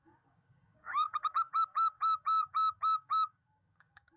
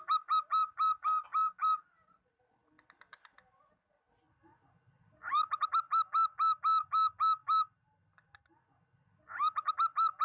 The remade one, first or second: first